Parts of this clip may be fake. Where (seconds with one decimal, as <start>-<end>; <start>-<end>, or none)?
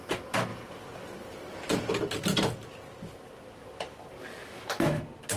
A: 4.4-5.0